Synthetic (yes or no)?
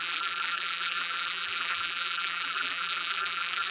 yes